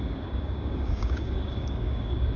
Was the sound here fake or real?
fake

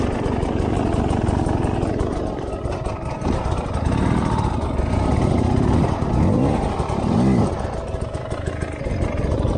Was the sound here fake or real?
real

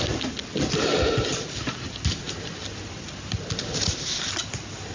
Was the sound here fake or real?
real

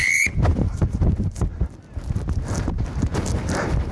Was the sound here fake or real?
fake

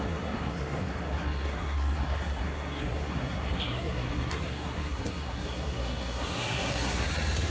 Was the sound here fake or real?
fake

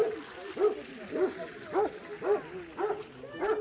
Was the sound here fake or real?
real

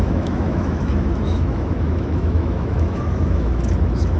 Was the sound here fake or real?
fake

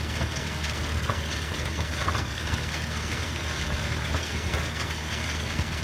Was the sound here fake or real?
fake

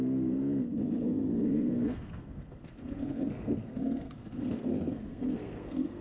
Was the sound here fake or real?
fake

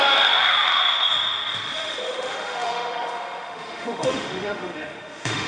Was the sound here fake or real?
fake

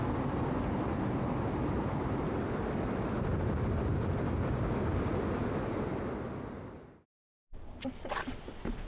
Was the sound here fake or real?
real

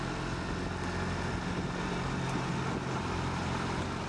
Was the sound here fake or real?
real